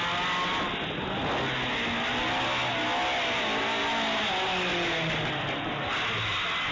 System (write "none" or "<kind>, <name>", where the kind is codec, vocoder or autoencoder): none